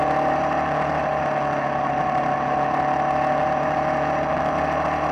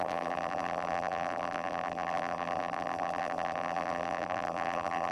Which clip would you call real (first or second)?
first